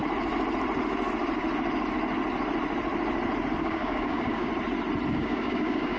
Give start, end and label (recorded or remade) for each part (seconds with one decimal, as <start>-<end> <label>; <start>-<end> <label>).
0.0-3.6 recorded; 3.6-4.5 remade; 4.5-5.1 recorded; 5.1-6.0 remade